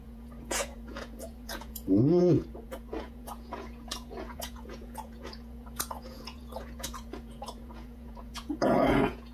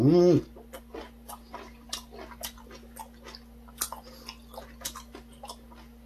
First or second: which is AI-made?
first